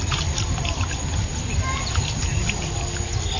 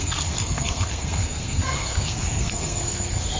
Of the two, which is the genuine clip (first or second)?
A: first